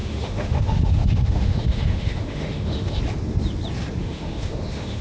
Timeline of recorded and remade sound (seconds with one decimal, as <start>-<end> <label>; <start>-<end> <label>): 0.0-3.0 remade; 3.0-4.0 recorded; 4.0-5.0 remade